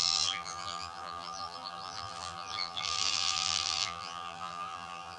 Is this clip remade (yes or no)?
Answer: yes